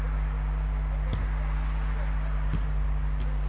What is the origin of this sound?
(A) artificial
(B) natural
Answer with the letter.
B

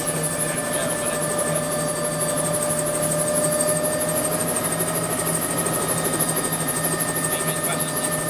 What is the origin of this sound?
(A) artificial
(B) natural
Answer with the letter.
B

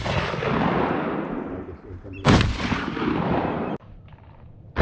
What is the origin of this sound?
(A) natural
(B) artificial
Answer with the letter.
A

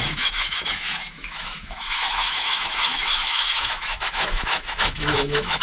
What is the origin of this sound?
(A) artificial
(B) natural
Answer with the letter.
A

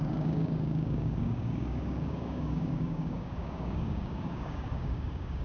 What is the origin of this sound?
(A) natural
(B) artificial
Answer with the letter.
B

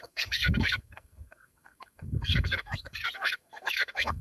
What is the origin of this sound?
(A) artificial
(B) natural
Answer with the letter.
A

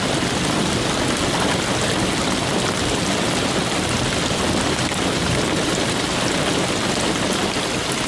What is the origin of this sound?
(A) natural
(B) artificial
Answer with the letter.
A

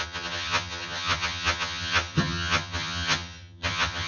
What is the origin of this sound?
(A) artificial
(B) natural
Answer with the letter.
A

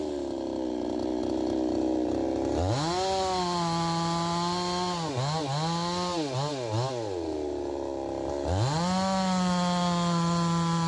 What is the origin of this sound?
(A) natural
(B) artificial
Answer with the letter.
A